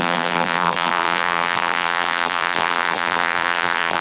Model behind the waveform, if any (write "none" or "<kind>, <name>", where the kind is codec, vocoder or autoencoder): vocoder, BigVGAN v2